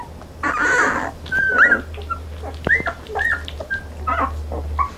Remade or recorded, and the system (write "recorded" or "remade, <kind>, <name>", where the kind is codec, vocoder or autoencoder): recorded